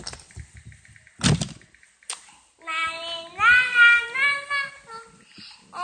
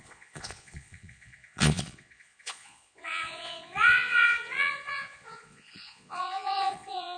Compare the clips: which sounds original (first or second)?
first